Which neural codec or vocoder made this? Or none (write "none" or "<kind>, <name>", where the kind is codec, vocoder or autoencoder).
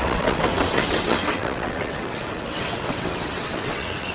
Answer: vocoder, WaveNeXt